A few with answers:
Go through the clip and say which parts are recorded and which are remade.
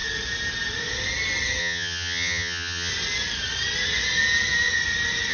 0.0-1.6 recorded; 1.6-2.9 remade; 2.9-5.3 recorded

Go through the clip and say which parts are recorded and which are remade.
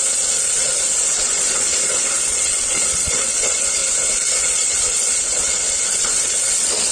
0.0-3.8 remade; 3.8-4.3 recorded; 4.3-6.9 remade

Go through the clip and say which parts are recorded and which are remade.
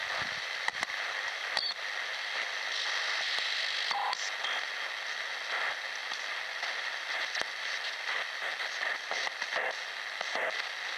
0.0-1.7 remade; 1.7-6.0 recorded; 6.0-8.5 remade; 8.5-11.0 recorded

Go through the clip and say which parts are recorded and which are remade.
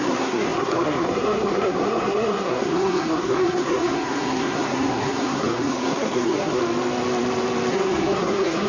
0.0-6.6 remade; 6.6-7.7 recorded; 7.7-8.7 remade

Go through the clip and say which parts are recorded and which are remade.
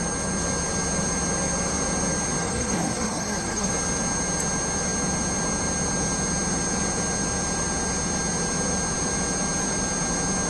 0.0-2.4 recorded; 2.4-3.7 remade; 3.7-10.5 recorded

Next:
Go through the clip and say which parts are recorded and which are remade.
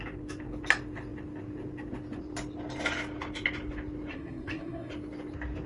0.0-4.1 recorded; 4.1-4.9 remade; 4.9-5.7 recorded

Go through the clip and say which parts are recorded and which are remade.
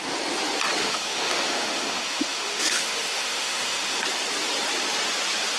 0.0-0.8 recorded; 0.8-4.0 remade; 4.0-5.6 recorded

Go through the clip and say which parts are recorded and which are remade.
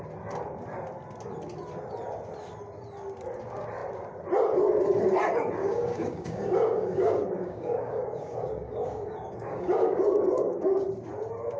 0.0-5.6 recorded; 5.6-10.8 remade; 10.8-11.6 recorded